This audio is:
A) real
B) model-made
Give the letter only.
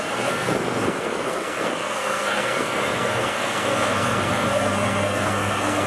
B